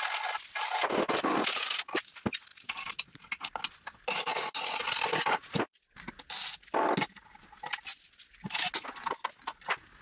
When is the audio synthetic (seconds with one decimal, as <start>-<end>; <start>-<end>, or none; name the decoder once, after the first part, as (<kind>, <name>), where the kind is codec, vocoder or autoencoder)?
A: none